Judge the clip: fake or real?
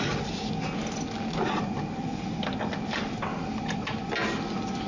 real